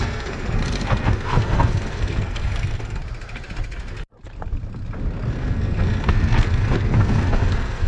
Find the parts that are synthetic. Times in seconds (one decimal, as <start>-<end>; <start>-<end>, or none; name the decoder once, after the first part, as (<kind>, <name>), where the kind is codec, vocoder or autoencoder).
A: 0.0-3.0 (codec, SNAC); 5.3-7.9